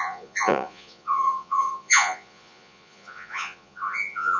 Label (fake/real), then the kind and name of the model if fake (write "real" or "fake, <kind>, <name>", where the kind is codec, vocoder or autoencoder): fake, vocoder, Vocos